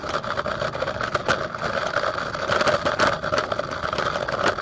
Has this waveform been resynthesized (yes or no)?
no